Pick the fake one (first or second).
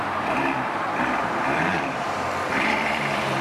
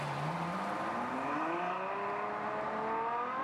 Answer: first